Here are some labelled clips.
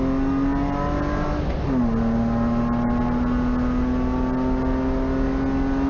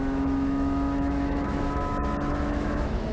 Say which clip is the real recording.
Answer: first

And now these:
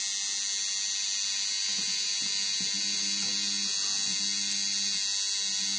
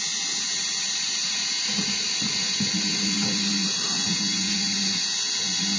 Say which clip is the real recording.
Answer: first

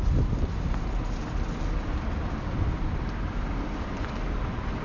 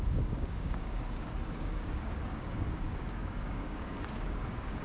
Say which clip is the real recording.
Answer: first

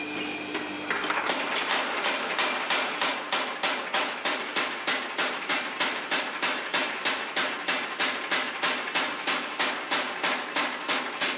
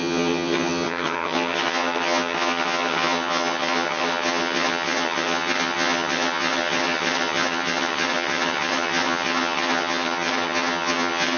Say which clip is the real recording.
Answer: first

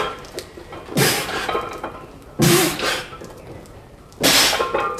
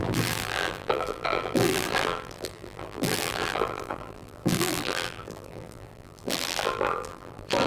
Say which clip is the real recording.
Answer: first